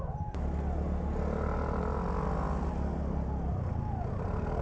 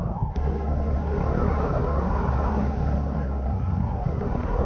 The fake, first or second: second